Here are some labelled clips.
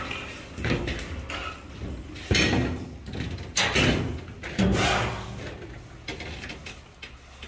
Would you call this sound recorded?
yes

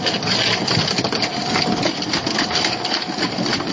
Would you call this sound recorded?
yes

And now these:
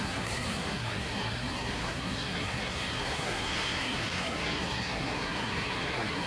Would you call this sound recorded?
no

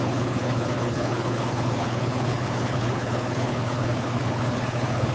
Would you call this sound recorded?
no